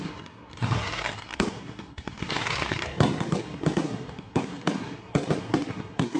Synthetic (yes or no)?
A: yes